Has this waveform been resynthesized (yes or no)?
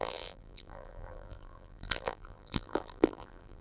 yes